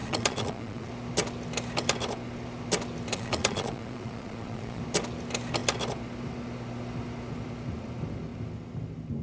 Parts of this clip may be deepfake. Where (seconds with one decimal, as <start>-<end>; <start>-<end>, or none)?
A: 0.0-0.9; 3.1-4.8